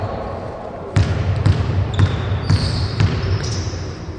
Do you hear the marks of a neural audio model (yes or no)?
yes